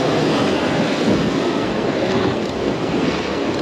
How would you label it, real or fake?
fake